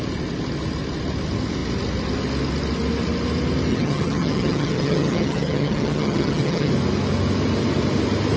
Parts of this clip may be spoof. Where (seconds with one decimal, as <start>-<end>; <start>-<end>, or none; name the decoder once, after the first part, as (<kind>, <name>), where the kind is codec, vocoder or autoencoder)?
3.7-6.7 (vocoder, HiFi-GAN)